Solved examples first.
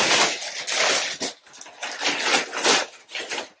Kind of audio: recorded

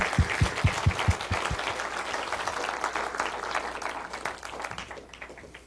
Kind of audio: recorded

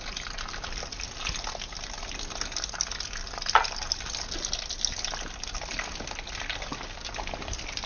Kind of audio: recorded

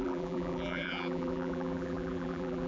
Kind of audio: remade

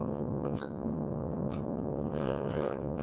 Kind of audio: remade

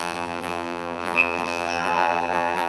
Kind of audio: remade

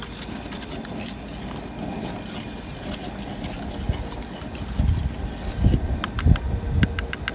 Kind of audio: recorded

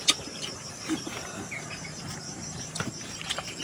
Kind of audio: remade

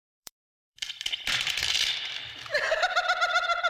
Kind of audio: remade